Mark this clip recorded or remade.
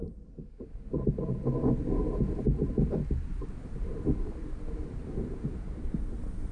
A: recorded